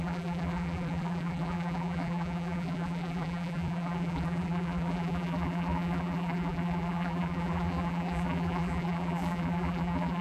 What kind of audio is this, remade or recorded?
remade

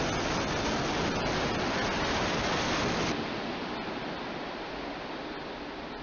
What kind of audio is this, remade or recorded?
recorded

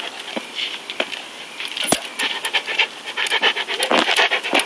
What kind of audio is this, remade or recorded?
recorded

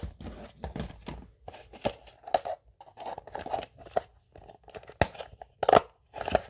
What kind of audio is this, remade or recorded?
recorded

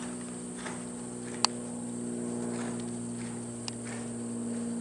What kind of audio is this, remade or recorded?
recorded